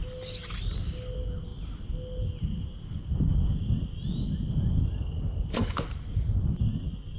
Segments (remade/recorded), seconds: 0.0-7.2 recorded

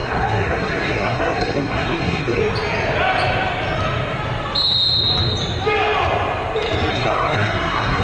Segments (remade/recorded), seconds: 0.0-2.4 remade; 2.4-6.9 recorded; 6.9-8.0 remade

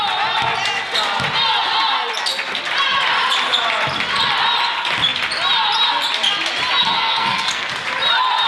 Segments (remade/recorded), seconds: 0.0-6.8 recorded; 6.8-7.7 remade; 7.7-8.5 recorded

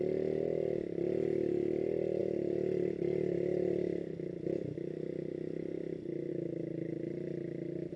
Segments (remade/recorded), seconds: 0.0-8.0 recorded

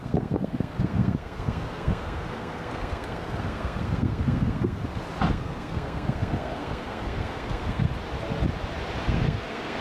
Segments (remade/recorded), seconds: 0.0-4.8 remade; 4.8-5.3 recorded; 5.3-7.9 remade; 7.9-9.1 recorded; 9.1-9.8 remade

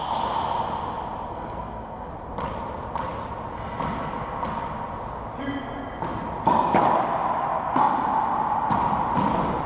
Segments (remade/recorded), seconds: 0.0-1.3 recorded; 1.3-2.1 remade; 2.1-9.7 recorded

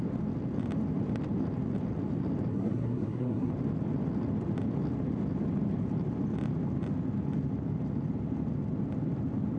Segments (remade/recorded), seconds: 0.0-2.5 recorded; 2.5-3.5 remade; 3.5-9.6 recorded

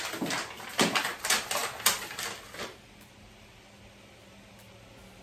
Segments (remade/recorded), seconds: 0.0-5.2 recorded